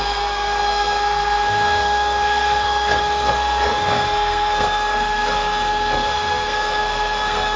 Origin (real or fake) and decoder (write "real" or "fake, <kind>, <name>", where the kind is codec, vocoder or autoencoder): fake, codec, SNAC